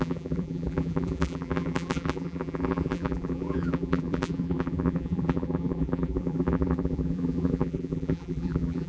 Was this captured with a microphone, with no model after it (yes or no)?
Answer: no